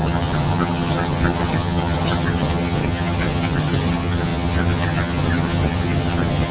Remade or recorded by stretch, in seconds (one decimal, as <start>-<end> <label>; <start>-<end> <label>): 0.0-6.5 remade